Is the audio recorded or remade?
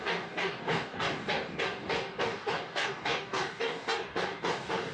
remade